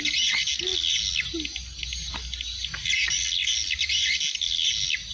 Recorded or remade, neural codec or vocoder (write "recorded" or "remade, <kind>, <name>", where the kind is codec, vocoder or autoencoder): recorded